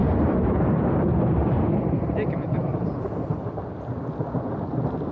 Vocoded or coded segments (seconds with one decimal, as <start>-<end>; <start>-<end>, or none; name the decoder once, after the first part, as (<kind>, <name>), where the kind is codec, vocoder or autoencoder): 0.0-3.1 (vocoder, BigVGAN v2)